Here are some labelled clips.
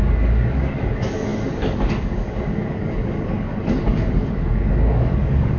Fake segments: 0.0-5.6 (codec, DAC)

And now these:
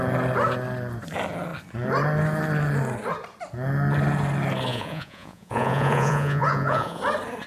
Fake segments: 4.7-7.0 (vocoder, Vocos)

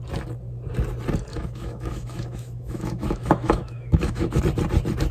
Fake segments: 1.3-4.4 (autoencoder, DAC-VAE)

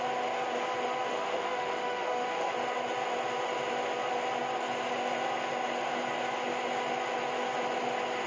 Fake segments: 1.1-2.5 (autoencoder, DAC-VAE)

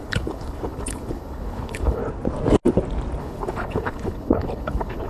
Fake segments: 0.0-2.0 (codec, HILCodec); 3.2-5.1

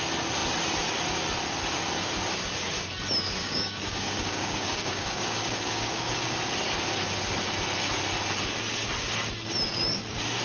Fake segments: 3.4-6.1 (codec, DAC)

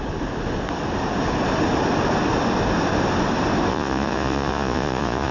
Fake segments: 3.7-5.3 (vocoder, Vocos)

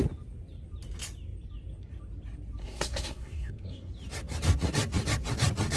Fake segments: 2.6-3.9 (codec, SNAC)